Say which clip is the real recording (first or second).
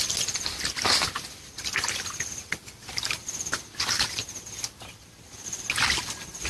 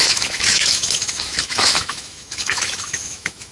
first